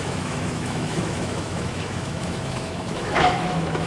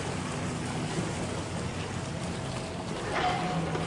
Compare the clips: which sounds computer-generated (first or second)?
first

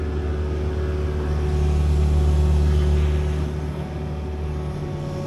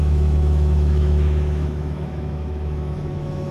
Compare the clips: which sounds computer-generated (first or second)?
second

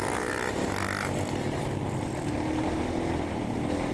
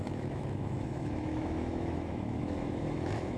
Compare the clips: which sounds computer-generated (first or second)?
second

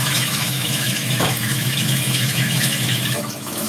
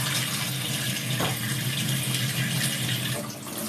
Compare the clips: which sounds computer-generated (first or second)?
first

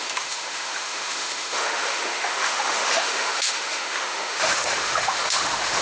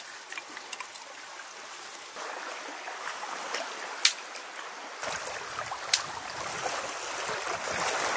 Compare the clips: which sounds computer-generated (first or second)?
first